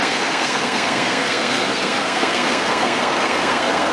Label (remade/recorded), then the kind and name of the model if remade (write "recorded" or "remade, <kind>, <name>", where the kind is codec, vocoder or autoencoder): remade, codec, SNAC